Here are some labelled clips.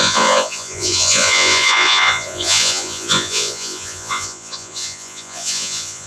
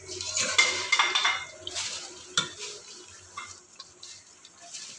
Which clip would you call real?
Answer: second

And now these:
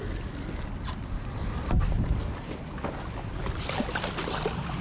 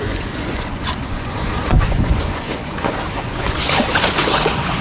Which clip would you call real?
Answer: first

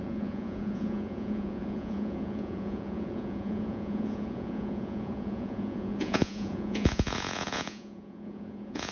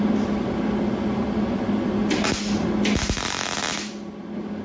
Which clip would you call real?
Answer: second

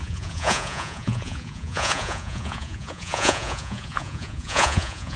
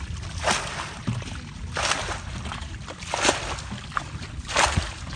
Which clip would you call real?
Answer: second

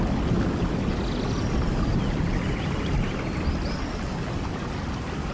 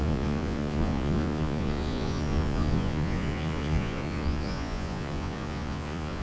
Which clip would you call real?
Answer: first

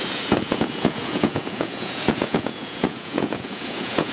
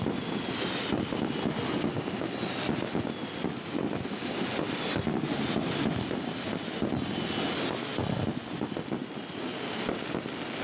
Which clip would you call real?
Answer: second